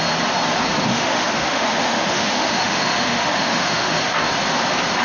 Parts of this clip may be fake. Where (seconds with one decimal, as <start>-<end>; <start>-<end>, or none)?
0.9-3.9